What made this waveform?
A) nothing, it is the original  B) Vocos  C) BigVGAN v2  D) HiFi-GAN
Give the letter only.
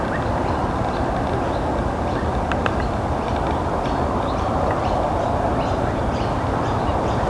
A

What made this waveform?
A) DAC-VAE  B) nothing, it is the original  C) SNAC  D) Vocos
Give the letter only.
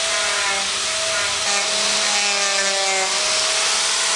B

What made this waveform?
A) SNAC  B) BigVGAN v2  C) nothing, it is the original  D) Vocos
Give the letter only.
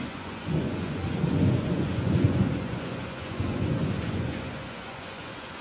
D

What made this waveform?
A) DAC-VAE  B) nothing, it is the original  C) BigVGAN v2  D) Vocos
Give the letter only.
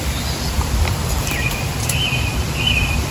C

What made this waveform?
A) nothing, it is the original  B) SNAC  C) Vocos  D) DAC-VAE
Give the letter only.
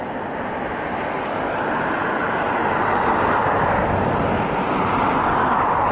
A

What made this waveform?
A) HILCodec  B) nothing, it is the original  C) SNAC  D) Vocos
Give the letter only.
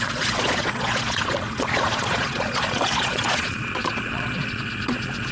D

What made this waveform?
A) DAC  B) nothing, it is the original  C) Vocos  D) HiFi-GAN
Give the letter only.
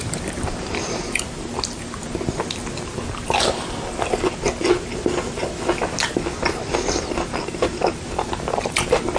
B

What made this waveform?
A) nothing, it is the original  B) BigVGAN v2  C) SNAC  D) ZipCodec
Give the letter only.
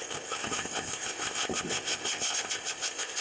D